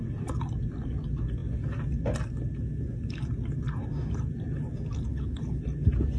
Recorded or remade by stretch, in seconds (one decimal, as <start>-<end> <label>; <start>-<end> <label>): 0.0-5.1 recorded; 5.1-5.6 remade; 5.6-6.2 recorded